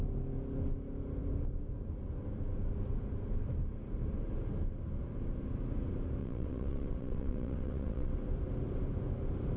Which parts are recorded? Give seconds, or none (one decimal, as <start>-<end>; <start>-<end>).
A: 0.0-6.2; 8.1-9.6